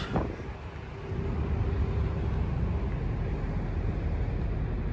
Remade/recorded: recorded